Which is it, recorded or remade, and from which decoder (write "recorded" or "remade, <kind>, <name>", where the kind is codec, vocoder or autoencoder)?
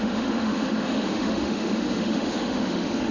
remade, autoencoder, DAC-VAE